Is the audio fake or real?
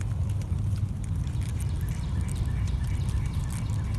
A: real